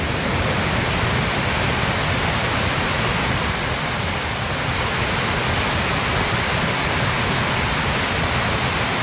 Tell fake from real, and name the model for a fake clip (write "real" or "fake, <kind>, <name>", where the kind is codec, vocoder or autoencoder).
real